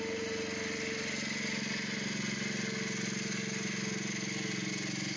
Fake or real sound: real